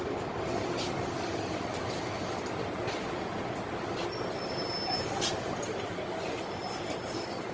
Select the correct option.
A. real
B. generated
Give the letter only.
A